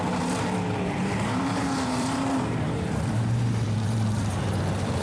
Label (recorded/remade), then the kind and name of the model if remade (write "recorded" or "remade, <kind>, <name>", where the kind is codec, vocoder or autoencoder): remade, vocoder, BigVGAN v2